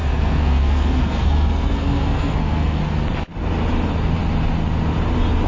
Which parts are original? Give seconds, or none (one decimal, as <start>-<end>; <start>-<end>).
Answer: 2.8-5.5